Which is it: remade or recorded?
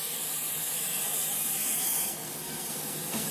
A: remade